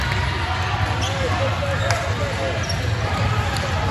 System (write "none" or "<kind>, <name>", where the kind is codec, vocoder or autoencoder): none